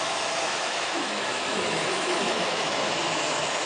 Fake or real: fake